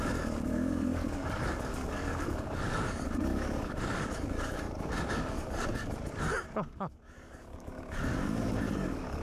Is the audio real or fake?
fake